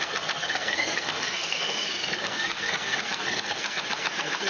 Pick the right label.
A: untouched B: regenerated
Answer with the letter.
B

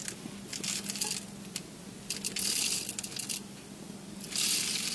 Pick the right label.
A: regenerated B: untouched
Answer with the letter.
B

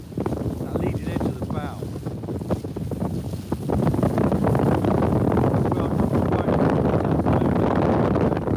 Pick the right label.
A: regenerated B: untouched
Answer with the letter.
B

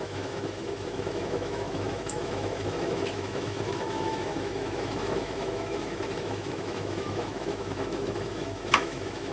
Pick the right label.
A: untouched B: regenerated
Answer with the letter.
B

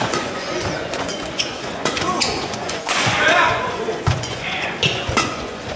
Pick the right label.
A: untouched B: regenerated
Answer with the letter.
B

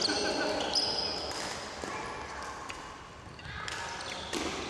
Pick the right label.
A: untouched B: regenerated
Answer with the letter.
A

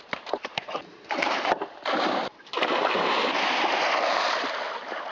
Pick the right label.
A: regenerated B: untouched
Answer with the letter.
A